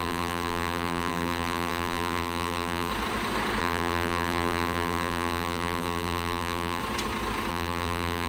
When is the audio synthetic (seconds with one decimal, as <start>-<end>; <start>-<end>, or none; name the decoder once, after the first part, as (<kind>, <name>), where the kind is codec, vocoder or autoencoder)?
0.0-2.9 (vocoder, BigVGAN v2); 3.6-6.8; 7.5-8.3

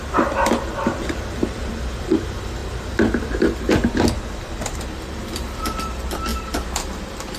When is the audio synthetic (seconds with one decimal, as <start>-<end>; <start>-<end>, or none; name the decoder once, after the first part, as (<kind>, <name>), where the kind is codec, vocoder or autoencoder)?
0.0-7.4 (vocoder, BigVGAN v2)

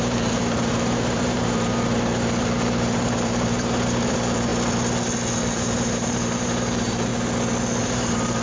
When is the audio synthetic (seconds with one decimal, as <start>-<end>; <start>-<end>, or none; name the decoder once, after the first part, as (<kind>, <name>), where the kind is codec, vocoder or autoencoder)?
0.0-1.7 (vocoder, BigVGAN v2); 2.4-4.5; 5.4-7.1; 7.8-8.4

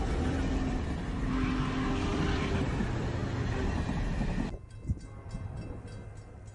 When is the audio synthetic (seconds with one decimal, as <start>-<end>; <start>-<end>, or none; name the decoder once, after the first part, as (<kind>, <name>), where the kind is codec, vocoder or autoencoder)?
2.1-2.8 (vocoder, BigVGAN v2)